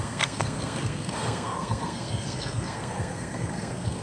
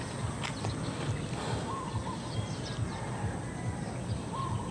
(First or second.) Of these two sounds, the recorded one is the second